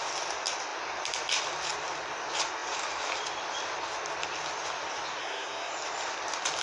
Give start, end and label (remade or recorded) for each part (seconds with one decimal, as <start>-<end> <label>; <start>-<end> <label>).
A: 0.0-5.2 recorded; 5.2-5.7 remade; 5.7-6.6 recorded

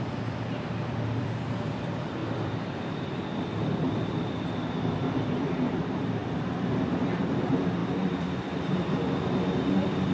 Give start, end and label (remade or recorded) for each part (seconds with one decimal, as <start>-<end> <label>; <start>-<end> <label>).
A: 0.0-10.1 remade

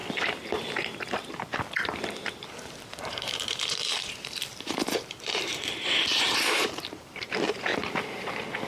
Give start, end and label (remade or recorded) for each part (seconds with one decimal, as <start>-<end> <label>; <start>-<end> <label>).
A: 0.0-2.3 recorded; 2.3-7.7 remade; 7.7-8.7 recorded

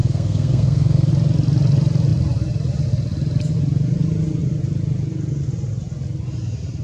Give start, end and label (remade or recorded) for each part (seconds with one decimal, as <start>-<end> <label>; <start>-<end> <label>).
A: 0.0-1.1 remade; 1.1-6.8 recorded

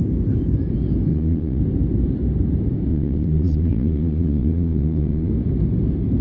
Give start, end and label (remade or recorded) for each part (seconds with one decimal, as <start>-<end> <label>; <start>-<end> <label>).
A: 0.0-1.1 recorded; 1.1-1.6 remade; 1.6-2.9 recorded; 2.9-5.3 remade; 5.3-6.2 recorded

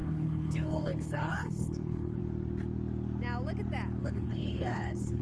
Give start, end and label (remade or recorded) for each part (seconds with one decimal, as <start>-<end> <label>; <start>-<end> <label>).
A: 0.0-2.2 remade; 2.2-4.0 recorded; 4.0-5.2 remade

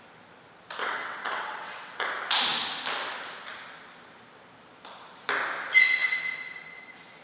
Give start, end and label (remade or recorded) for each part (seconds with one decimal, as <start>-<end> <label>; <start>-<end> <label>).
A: 0.0-0.8 recorded; 0.8-2.1 remade; 2.1-7.2 recorded

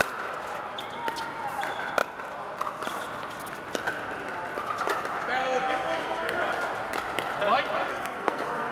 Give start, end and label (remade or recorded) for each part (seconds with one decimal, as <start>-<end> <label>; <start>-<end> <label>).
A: 0.0-5.4 recorded; 5.4-6.4 remade; 6.4-7.9 recorded; 7.9-8.7 remade